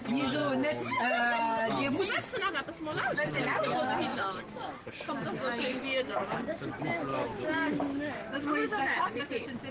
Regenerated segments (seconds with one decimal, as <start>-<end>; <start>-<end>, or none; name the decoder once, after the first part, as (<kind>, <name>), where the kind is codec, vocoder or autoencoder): 0.4-2.0 (autoencoder, DAC-VAE); 7.1-9.2